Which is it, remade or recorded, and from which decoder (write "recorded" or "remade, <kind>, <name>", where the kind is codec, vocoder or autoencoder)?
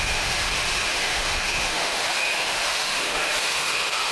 remade, autoencoder, DAC-VAE